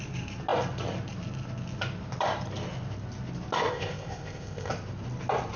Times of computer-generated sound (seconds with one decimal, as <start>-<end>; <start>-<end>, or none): 3.7-4.7